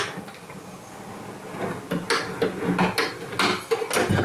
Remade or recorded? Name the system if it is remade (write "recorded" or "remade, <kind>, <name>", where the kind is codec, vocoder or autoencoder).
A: recorded